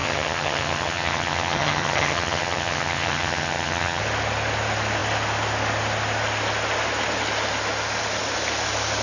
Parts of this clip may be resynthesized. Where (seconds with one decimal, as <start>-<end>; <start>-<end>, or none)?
0.0-4.0